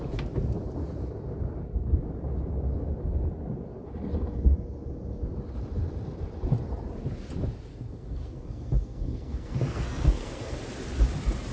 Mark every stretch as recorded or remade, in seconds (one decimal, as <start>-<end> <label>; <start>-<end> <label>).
0.0-7.7 recorded; 7.7-10.6 remade; 10.6-11.5 recorded